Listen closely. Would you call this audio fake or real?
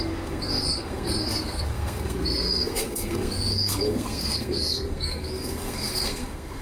fake